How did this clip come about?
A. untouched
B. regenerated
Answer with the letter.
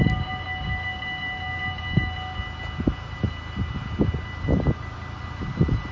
A